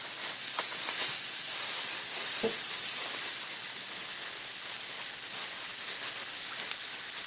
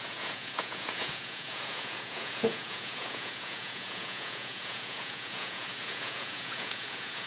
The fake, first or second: second